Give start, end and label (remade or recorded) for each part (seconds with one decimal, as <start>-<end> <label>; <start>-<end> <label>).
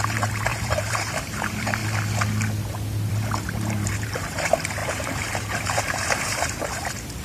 0.0-1.8 remade; 1.8-3.1 recorded; 3.1-7.2 remade